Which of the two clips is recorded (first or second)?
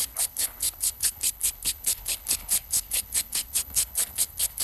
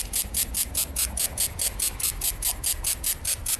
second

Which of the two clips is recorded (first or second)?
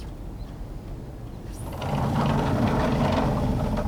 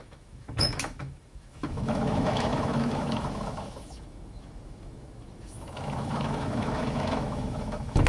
first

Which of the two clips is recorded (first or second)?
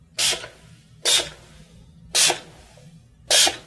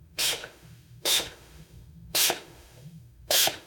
first